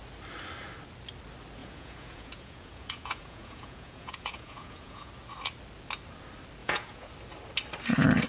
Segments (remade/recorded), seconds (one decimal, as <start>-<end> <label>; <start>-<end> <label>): 0.0-1.6 recorded; 1.6-5.1 remade; 5.1-6.6 recorded; 6.6-7.1 remade; 7.1-8.3 recorded

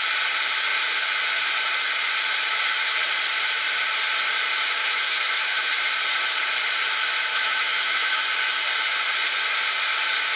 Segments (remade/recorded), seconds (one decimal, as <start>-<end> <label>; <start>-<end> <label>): 0.0-4.8 recorded; 4.8-5.7 remade; 5.7-7.3 recorded; 7.3-8.2 remade; 8.2-10.4 recorded

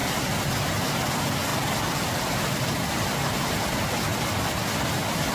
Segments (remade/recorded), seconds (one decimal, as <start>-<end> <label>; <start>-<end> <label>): 0.0-1.5 recorded; 1.5-3.5 remade; 3.5-4.1 recorded; 4.1-5.3 remade

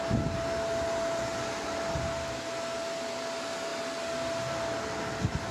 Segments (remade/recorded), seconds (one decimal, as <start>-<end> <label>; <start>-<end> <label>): 0.0-5.5 recorded

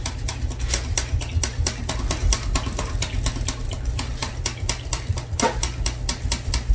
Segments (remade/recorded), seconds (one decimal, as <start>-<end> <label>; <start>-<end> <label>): 0.0-6.7 recorded

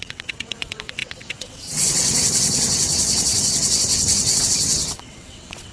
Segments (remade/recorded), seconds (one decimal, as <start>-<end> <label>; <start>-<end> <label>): 0.0-5.7 remade

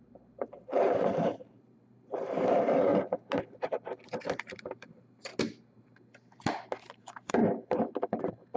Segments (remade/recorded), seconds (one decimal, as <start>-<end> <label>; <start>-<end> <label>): 0.0-2.9 remade; 2.9-4.3 recorded; 4.3-5.3 remade; 5.3-7.0 recorded; 7.0-7.4 remade; 7.4-8.2 recorded; 8.2-8.6 remade